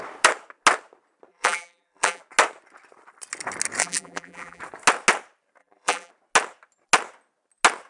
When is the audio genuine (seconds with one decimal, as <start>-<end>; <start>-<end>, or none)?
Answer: 0.0-1.3; 2.2-3.8; 4.6-5.6; 6.1-7.9